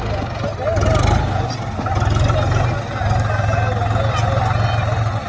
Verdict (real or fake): real